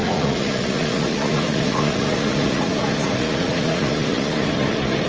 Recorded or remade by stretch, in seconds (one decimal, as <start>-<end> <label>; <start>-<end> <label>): 0.0-5.1 remade